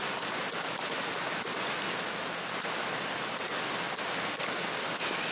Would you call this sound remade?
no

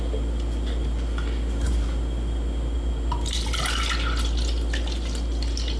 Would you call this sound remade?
no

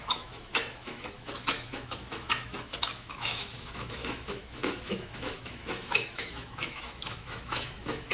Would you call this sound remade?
yes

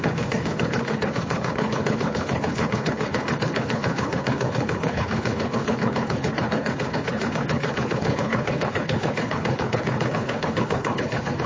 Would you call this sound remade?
yes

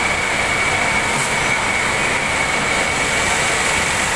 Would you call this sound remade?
no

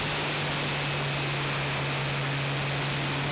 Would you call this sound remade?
no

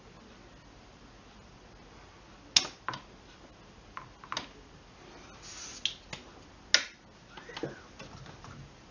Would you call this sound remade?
no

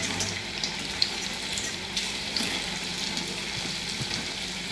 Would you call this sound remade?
yes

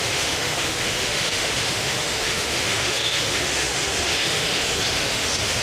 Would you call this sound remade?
yes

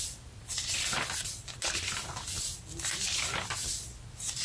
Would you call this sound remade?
no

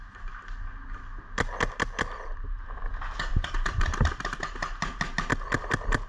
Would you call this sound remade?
no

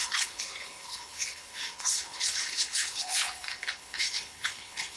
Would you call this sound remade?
yes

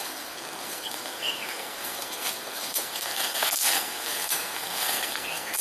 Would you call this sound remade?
yes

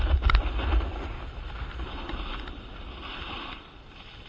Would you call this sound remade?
no